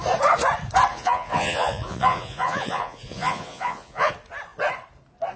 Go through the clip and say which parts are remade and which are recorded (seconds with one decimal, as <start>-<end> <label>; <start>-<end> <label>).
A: 0.0-0.9 recorded; 0.9-4.1 remade; 4.1-5.4 recorded